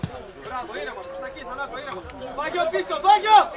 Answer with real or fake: real